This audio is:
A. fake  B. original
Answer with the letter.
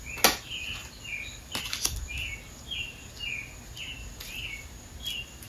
B